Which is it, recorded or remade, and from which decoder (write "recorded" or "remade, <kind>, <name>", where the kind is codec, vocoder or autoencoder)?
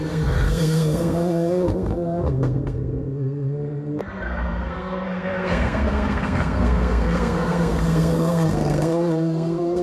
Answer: remade, codec, SNAC